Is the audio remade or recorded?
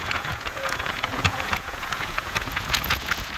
remade